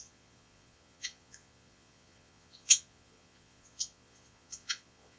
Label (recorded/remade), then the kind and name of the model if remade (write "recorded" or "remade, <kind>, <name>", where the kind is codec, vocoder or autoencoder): remade, vocoder, Vocos